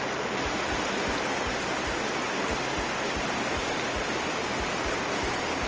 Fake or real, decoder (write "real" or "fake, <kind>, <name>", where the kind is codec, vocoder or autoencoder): real